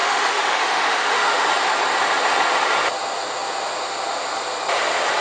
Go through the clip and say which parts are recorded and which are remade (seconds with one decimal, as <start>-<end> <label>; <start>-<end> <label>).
0.0-1.5 remade; 1.5-5.2 recorded

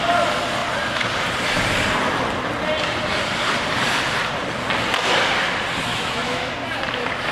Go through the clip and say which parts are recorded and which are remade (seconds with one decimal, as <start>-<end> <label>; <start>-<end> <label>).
0.0-5.9 recorded; 5.9-6.5 remade; 6.5-7.3 recorded

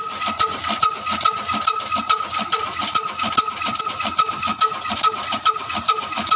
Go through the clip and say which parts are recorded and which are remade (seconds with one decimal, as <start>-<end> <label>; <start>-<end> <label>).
0.0-6.4 recorded

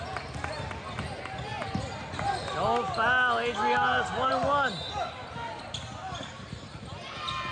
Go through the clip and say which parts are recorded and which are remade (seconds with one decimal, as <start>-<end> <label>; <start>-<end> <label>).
0.0-7.5 recorded